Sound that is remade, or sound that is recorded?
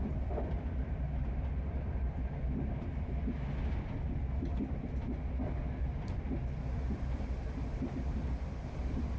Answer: remade